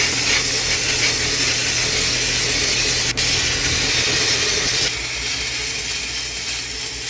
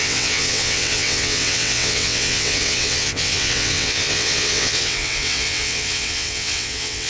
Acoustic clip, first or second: first